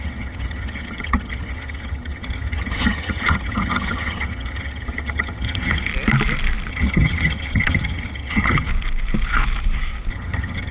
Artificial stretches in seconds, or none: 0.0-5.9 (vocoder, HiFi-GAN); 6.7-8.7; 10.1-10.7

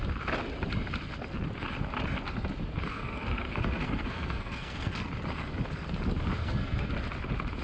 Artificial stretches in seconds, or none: 2.9-5.1 (codec, SNAC); 6.4-6.9

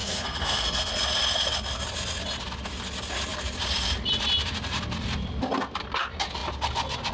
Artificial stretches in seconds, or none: 0.0-0.9 (codec, SNAC)